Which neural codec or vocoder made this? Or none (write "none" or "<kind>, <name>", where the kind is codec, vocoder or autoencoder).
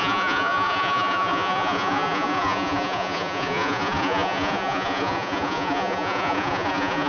vocoder, Vocos